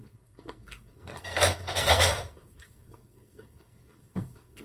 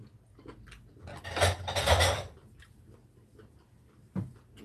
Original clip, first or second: second